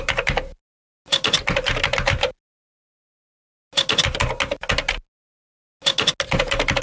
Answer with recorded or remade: recorded